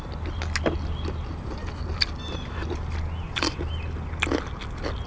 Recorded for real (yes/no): yes